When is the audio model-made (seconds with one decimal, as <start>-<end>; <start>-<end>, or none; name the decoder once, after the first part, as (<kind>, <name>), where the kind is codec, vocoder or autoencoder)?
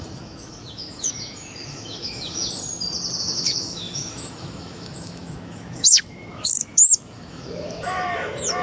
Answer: 0.0-2.6 (autoencoder, DAC-VAE); 3.2-8.6